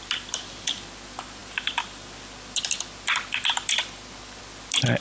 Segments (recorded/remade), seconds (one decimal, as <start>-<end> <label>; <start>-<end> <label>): 0.0-5.0 recorded